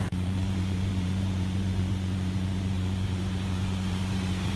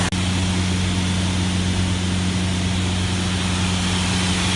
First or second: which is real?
second